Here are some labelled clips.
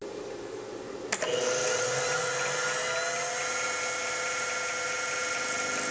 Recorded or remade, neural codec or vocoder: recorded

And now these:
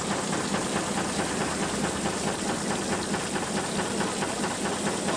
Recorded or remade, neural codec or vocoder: recorded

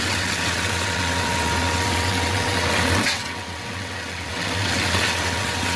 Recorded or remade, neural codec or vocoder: remade, vocoder, WaveNeXt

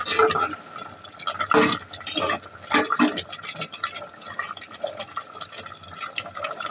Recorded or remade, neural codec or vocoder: recorded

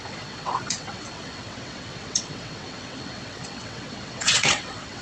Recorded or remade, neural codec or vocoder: remade, vocoder, WaveNeXt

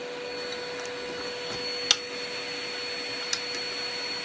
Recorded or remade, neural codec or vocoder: recorded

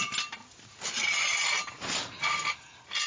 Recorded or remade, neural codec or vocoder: recorded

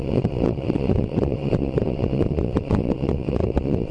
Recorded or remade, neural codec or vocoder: remade, vocoder, WaveNeXt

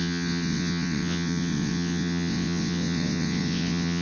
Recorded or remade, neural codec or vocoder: remade, vocoder, WaveNeXt